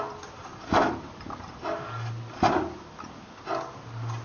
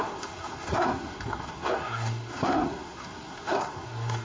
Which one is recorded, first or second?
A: first